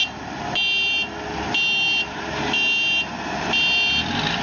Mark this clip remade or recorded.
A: recorded